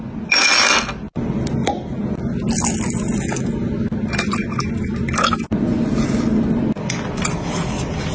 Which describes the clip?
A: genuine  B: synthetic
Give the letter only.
A